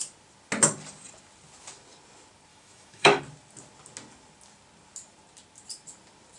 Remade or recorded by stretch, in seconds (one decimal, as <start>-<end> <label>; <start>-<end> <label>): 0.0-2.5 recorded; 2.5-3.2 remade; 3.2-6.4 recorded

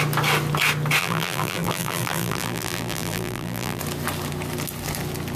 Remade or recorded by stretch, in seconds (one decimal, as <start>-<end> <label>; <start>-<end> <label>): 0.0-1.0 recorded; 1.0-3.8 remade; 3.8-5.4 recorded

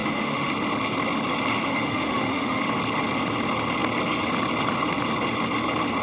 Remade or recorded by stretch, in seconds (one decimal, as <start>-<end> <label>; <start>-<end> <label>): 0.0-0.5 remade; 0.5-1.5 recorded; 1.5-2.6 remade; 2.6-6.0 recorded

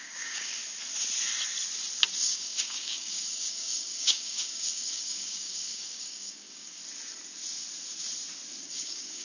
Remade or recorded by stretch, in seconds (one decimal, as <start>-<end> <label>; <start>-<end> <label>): 0.0-0.6 remade; 0.6-2.2 recorded; 2.2-6.8 remade; 6.8-8.6 recorded; 8.6-9.2 remade